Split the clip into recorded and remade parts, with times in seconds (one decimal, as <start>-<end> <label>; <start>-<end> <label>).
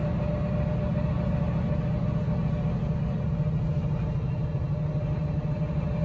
0.0-6.0 recorded